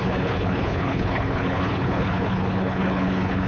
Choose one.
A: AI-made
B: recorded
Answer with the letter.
A